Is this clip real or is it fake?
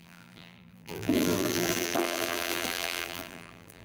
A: fake